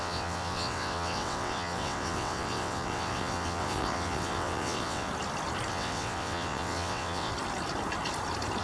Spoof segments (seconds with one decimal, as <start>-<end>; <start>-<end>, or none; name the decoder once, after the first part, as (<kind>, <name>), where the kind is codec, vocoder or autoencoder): 0.0-5.1 (vocoder, WaveNeXt); 5.7-7.3